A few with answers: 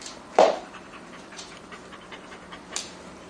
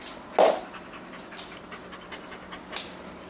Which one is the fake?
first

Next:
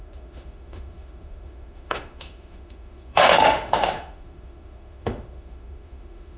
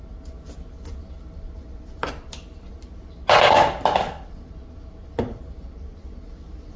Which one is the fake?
first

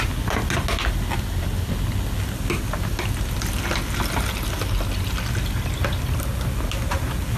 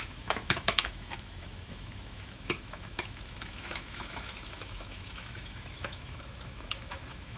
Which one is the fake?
second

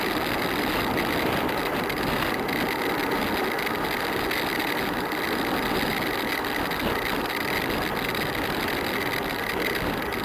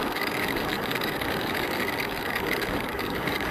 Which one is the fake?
second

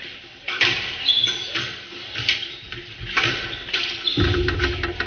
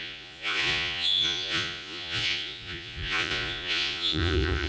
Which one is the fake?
second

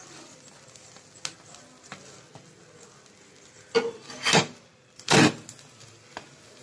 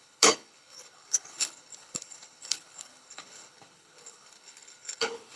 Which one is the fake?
second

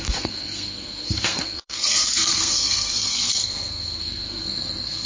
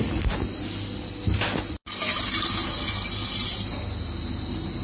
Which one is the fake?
first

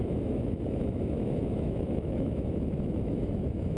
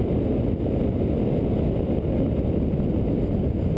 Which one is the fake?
first